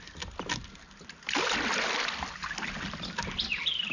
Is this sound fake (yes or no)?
no